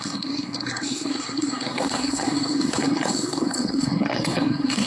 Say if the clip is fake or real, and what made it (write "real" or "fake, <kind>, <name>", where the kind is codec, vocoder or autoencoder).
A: fake, codec, SNAC